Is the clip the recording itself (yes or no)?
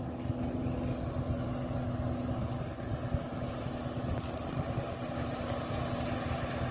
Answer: yes